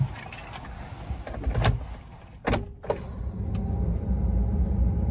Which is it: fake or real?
real